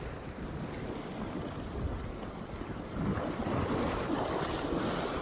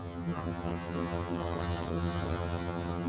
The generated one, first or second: second